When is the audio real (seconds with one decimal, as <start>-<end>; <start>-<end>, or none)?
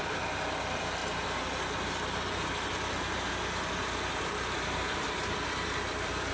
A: 1.0-4.3